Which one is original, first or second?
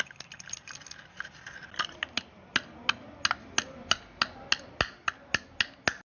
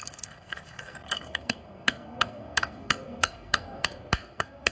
first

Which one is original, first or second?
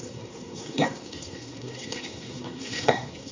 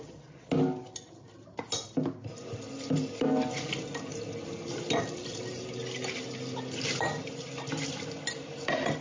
second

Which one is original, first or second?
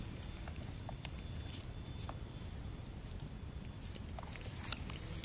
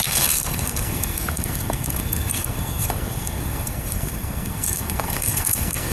first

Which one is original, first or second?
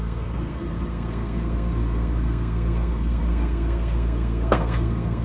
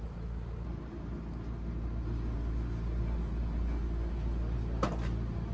second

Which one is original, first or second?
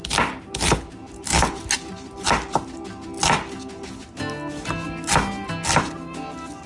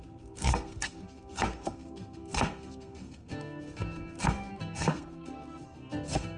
first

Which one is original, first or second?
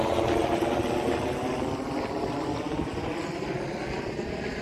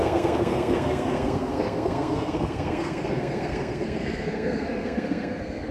first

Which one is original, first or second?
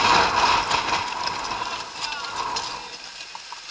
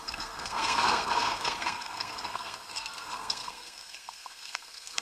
first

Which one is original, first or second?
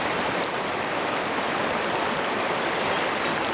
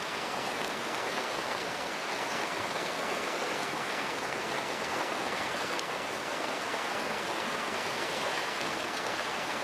first